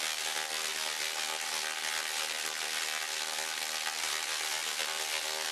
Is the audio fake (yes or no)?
no